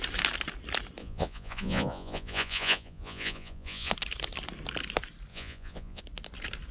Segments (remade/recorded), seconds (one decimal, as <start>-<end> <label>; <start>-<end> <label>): 0.0-1.0 recorded; 1.0-3.9 remade; 3.9-5.3 recorded; 5.3-6.0 remade; 6.0-6.7 recorded